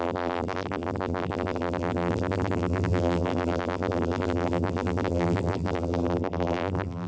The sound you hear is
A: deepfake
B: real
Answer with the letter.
A